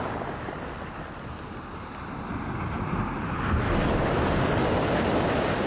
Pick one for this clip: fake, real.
real